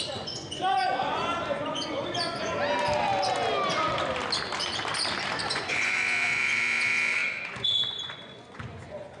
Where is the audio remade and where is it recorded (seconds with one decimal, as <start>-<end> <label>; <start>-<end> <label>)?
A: 0.0-1.2 remade; 1.2-1.7 recorded; 1.7-2.5 remade; 2.5-5.5 recorded; 5.5-9.2 remade